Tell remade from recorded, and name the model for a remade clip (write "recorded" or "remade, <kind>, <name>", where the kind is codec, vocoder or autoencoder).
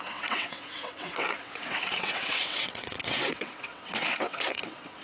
remade, vocoder, WaveNeXt